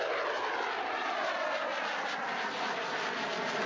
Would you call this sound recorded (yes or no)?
yes